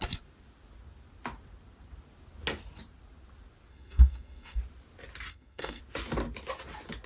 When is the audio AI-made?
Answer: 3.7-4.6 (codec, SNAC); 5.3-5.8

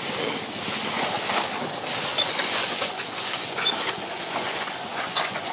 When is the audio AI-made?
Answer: 2.1-5.5 (vocoder, Vocos)

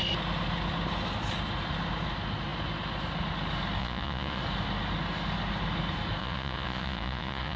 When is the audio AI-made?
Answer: 3.8-4.4 (vocoder, Vocos); 6.2-7.6

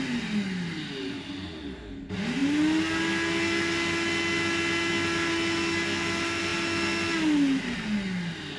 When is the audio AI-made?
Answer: none

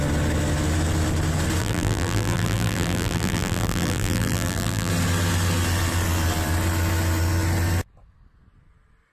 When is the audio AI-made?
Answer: 1.6-4.9 (vocoder, BigVGAN v2)

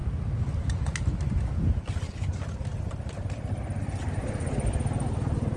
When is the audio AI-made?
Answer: none

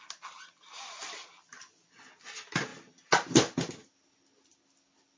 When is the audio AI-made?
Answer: none

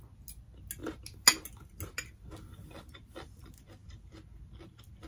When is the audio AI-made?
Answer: none